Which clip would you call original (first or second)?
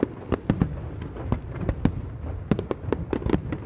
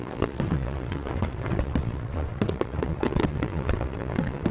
first